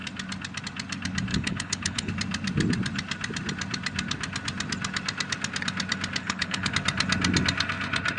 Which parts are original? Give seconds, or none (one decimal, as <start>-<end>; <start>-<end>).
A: 0.0-1.3; 2.1-6.2; 6.7-8.2